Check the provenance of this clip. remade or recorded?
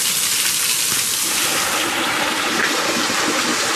recorded